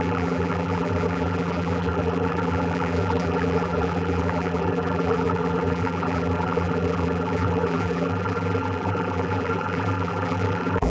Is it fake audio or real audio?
fake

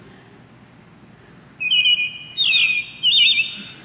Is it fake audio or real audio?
real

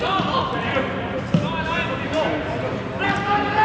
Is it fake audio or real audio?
real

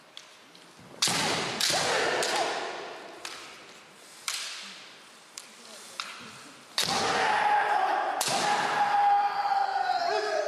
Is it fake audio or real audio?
real